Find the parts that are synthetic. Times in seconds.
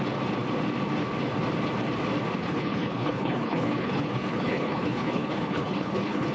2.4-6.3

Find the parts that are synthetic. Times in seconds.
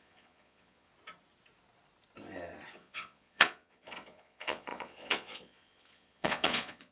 0.0-0.9; 2.7-6.9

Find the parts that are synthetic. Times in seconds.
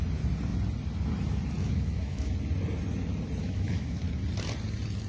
1.6-2.3; 3.4-4.0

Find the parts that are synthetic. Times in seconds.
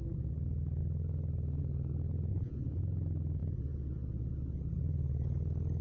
2.3-2.8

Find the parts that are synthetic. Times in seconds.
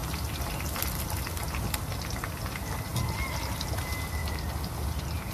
none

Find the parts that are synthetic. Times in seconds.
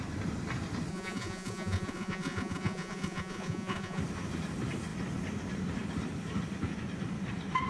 0.9-4.0